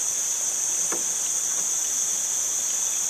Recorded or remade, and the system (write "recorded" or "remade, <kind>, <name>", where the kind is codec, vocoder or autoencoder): recorded